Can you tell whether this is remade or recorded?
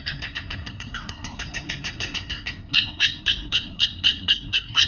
remade